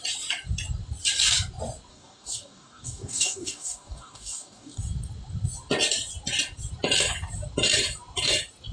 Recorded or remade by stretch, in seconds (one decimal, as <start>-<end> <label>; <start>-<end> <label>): 0.0-1.9 recorded; 1.9-4.8 remade; 4.8-8.7 recorded